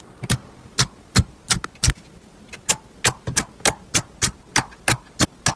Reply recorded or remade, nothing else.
recorded